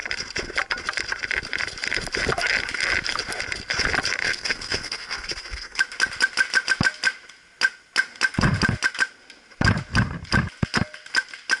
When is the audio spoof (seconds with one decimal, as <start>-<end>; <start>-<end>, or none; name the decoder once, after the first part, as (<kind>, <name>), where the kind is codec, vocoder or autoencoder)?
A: 4.2-5.8 (codec, SNAC)

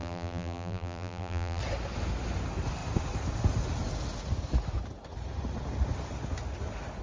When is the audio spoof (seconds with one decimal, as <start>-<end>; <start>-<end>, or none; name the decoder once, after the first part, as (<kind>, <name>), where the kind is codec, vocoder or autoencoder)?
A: 0.0-1.6 (vocoder, BigVGAN v2)

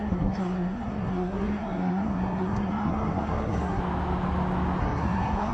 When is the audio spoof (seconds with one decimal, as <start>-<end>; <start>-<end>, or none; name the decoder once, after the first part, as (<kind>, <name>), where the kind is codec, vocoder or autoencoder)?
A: 0.0-3.8 (codec, SNAC); 4.8-5.5

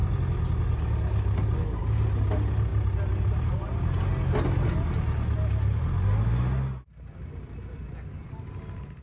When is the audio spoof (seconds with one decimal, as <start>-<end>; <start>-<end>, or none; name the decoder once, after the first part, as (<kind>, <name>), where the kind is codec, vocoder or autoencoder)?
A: none

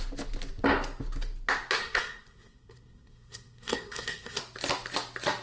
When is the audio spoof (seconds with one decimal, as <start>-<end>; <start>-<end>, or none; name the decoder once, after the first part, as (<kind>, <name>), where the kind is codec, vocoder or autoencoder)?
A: 1.8-4.4 (codec, SNAC)

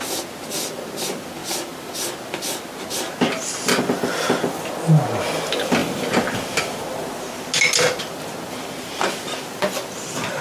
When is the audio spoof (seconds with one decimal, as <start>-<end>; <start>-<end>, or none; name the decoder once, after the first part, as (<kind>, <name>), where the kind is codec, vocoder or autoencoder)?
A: none

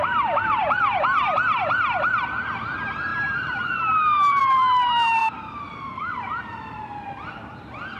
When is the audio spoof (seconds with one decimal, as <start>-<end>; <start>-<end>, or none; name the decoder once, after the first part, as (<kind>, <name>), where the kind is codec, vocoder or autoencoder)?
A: 0.0-0.6 (vocoder, BigVGAN v2); 2.6-8.0

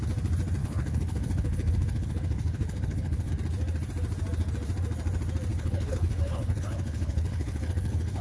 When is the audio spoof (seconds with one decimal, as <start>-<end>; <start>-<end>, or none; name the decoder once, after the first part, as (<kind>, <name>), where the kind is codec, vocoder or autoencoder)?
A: 0.6-3.3 (codec, HILCodec); 5.5-8.2